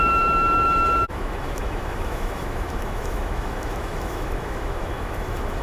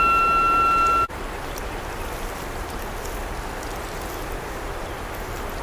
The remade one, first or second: first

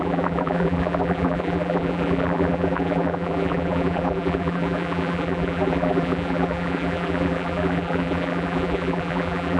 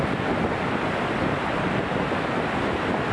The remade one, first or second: first